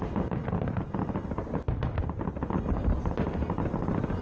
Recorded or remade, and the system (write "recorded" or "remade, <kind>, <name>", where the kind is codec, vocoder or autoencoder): recorded